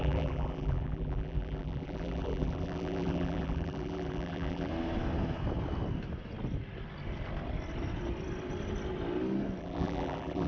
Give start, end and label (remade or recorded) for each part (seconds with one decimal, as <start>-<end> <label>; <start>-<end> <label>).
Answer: 0.0-4.7 remade; 4.7-9.6 recorded; 9.6-10.5 remade